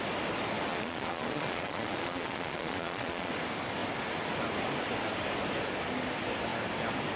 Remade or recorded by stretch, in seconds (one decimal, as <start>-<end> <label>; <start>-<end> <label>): 0.0-0.7 recorded; 0.7-3.3 remade; 3.3-7.2 recorded